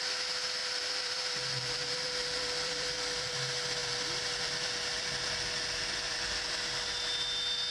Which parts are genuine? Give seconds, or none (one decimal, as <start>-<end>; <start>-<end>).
0.0-0.6; 3.3-3.8; 6.2-7.7